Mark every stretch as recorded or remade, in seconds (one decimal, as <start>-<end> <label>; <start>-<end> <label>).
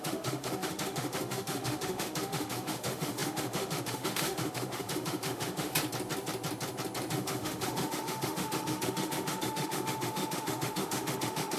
0.0-5.7 remade; 5.7-7.1 recorded; 7.1-11.6 remade